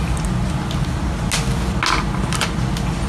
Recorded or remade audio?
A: recorded